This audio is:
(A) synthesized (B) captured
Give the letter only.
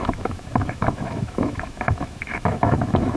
A